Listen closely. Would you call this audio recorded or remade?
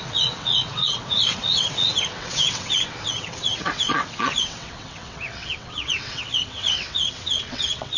remade